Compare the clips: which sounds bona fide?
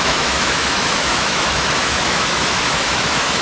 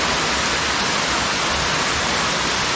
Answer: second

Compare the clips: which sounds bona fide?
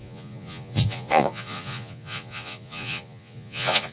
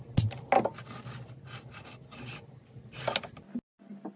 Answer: second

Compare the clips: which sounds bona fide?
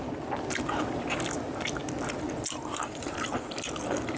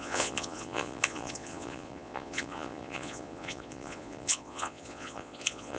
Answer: first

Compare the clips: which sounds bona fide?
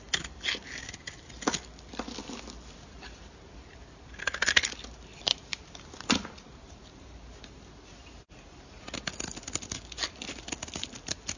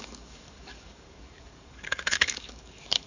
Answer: first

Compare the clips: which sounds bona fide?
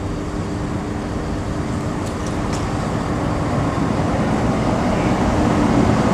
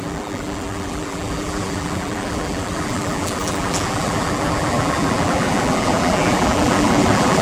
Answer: first